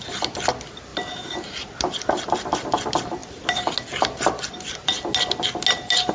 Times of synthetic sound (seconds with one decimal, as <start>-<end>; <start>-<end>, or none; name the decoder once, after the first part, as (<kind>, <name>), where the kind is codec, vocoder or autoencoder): none